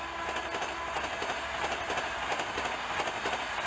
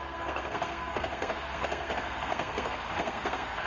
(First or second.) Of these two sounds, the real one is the first